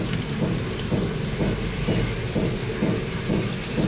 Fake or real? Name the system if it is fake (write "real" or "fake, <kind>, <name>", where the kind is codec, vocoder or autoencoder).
real